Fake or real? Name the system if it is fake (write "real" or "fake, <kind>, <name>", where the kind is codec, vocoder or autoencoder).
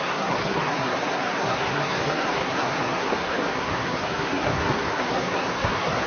fake, codec, SNAC